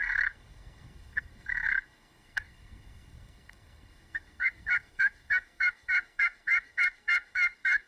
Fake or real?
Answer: fake